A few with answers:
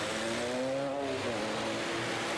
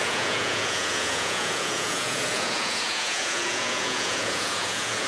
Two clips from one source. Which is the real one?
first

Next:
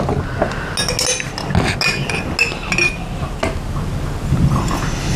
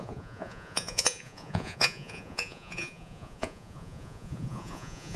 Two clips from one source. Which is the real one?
first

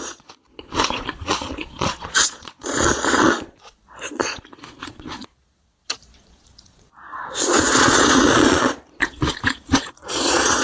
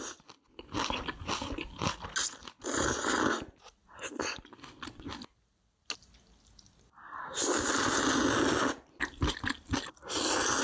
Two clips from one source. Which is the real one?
second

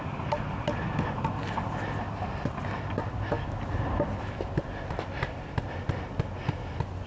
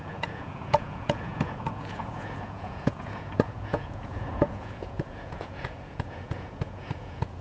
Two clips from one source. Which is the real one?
first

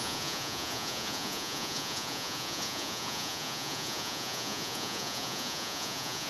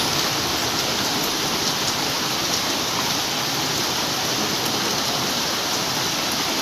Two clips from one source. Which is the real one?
second